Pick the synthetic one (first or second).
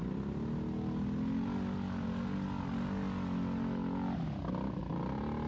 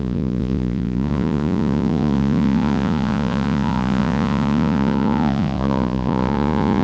second